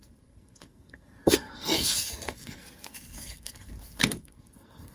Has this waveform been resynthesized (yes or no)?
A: yes